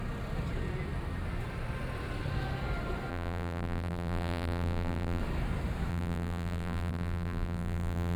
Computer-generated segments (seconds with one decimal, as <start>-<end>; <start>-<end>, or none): 3.1-5.2; 5.9-8.2